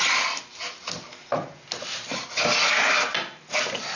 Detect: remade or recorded recorded